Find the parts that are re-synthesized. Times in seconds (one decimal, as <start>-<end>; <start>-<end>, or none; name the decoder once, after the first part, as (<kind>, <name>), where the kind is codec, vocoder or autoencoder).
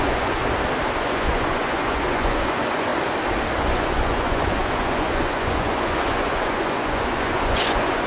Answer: 0.0-0.4 (vocoder, Vocos); 1.0-2.9; 3.6-8.1